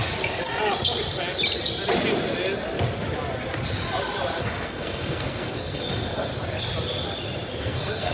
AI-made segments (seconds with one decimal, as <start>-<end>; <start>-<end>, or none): 4.4-6.3; 7.6-8.1